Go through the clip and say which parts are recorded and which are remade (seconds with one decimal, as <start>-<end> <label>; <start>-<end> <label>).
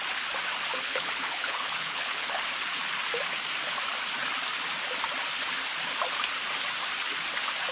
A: 0.0-0.7 recorded; 0.7-2.4 remade; 2.4-7.7 recorded